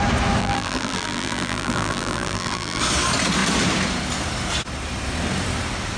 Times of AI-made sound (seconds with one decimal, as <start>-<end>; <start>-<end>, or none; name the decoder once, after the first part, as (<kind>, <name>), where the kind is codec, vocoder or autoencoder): 0.4-2.8 (vocoder, BigVGAN v2)